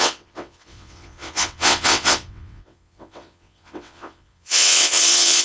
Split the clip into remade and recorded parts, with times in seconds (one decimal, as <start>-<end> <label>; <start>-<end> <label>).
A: 0.0-5.4 remade

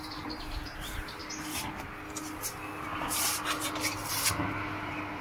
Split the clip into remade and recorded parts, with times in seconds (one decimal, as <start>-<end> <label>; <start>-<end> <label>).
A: 0.0-5.2 recorded

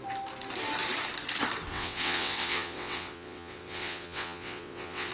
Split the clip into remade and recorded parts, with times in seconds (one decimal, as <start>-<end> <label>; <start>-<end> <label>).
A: 0.0-1.7 recorded; 1.7-5.1 remade